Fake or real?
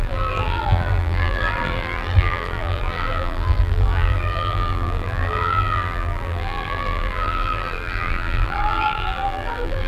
fake